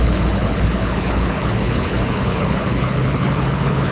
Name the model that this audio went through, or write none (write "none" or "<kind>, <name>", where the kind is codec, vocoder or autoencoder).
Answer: codec, HILCodec